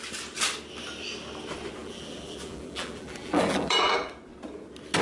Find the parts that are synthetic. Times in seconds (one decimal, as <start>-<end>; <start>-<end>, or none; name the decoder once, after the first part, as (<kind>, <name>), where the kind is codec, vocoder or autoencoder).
1.8-4.1 (vocoder, BigVGAN v2)